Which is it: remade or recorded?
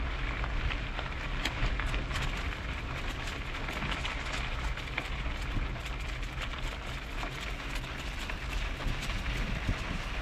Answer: recorded